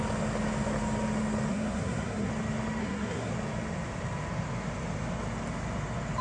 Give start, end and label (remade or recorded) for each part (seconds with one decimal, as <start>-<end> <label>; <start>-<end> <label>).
0.0-1.5 recorded; 1.5-2.3 remade; 2.3-2.8 recorded; 2.8-3.3 remade; 3.3-6.2 recorded